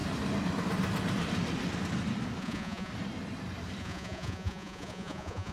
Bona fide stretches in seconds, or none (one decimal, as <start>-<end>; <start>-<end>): 0.0-2.4; 2.9-3.8